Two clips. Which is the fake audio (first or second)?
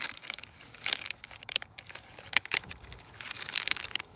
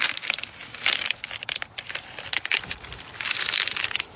first